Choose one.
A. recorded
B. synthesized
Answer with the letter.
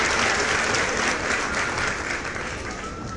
A